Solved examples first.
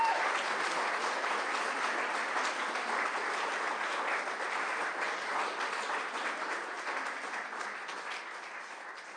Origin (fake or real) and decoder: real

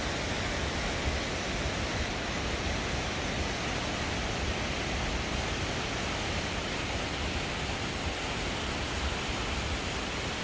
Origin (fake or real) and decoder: real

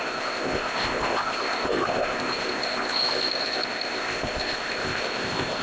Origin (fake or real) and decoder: fake, codec, ZipCodec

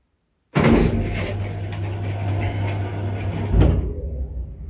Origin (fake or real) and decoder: real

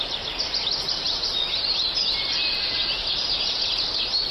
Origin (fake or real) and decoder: real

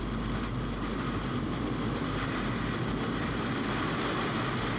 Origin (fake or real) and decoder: real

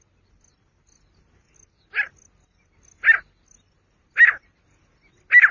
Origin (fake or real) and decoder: real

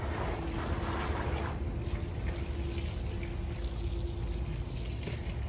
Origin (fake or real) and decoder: real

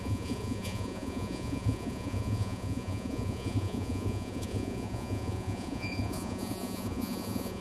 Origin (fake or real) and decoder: fake, vocoder, Vocos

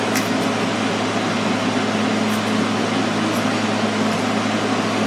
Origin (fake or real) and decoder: real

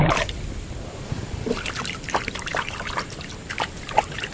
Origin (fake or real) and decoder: fake, vocoder, BigVGAN v2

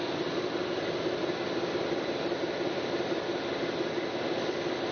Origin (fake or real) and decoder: real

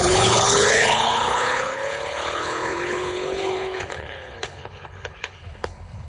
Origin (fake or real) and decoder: fake, codec, HILCodec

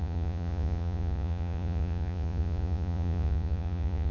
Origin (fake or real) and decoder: fake, vocoder, Vocos